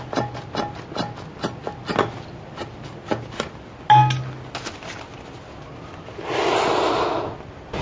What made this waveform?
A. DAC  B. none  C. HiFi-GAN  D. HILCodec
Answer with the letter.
B